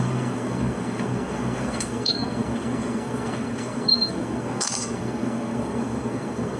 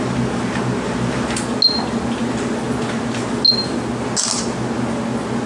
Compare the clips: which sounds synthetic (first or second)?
first